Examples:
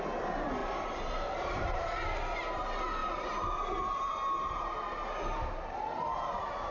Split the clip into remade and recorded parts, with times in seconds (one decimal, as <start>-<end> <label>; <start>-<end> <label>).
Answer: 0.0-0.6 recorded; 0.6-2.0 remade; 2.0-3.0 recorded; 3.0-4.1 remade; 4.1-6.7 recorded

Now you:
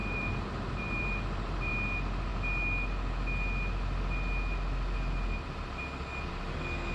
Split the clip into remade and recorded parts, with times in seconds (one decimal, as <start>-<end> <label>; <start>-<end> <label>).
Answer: 0.0-1.7 remade; 1.7-6.9 recorded

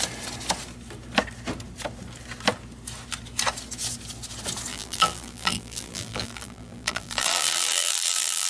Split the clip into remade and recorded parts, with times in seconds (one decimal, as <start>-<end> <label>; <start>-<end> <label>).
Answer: 0.0-4.7 recorded; 4.7-8.5 remade

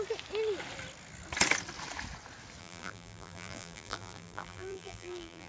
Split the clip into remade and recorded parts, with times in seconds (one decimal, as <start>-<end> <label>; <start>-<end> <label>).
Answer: 0.0-2.6 recorded; 2.6-5.5 remade

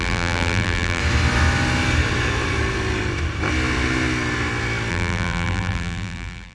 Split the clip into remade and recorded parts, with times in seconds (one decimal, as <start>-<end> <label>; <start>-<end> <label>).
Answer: 0.0-1.0 remade; 1.0-4.9 recorded; 4.9-6.5 remade

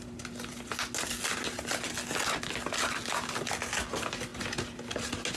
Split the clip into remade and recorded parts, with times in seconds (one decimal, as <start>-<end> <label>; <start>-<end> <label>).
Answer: 0.0-5.4 recorded